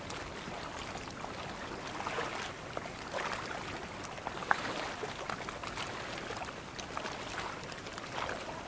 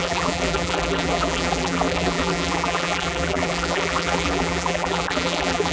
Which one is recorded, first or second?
first